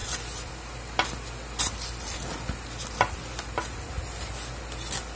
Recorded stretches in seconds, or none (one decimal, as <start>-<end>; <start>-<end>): 0.0-5.2